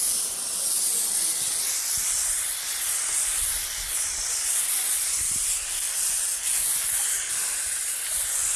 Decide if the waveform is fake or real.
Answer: real